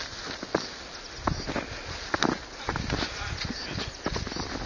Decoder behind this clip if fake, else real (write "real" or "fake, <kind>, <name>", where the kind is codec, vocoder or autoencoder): real